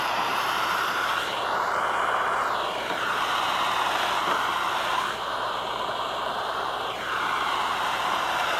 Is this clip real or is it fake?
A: fake